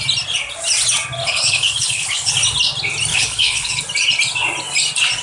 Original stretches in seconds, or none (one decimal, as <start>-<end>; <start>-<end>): 0.0-1.2; 2.3-3.1; 3.8-5.2